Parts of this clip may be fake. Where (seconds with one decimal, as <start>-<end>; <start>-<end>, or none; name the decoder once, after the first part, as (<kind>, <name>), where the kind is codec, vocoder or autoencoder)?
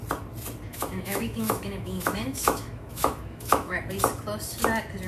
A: 0.7-3.8 (autoencoder, DAC-VAE)